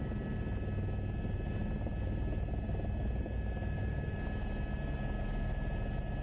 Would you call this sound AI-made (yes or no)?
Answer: no